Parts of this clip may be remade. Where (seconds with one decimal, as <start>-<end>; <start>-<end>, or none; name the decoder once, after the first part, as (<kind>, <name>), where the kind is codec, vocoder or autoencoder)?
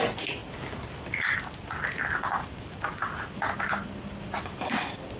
none